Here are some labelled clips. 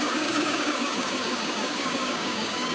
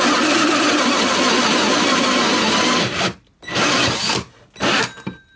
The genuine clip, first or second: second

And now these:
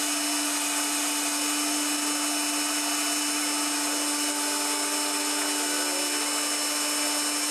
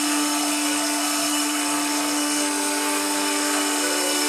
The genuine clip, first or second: first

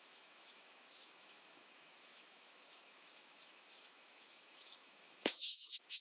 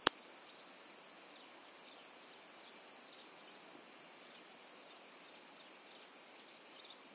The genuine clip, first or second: second